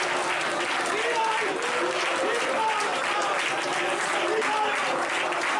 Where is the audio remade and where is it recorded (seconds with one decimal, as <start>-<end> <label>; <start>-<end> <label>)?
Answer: 0.0-5.6 recorded